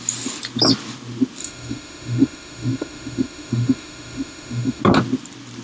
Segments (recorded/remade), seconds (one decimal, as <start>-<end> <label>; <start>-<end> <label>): 0.0-1.4 recorded; 1.4-4.8 remade; 4.8-5.6 recorded